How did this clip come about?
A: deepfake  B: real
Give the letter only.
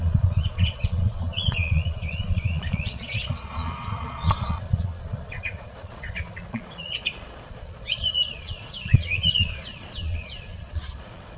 A